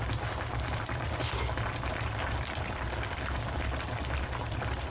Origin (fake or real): real